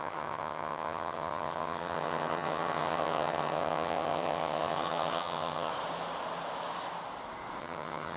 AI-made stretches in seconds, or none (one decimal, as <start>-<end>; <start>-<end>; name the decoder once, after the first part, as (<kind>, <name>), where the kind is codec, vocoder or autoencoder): 0.0-5.7 (vocoder, HiFi-GAN); 7.6-8.2